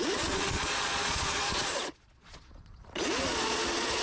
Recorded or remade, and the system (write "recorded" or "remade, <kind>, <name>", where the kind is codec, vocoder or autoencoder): remade, vocoder, Vocos